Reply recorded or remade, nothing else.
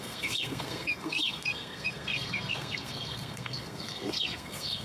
remade